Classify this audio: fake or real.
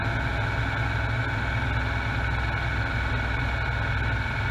real